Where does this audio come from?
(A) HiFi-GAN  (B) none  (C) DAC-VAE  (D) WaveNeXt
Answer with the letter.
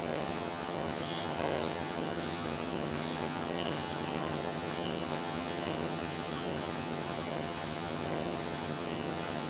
A